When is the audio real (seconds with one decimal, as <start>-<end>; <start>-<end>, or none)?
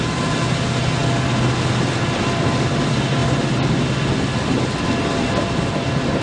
0.0-6.2